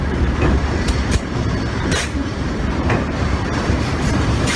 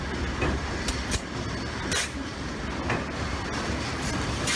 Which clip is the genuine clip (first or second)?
second